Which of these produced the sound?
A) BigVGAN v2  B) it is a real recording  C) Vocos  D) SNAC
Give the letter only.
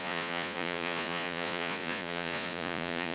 C